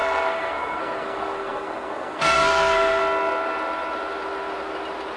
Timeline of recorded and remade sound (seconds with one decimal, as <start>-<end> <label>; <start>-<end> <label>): 0.0-3.0 remade; 3.0-5.2 recorded